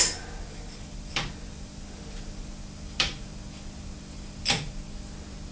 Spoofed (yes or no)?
no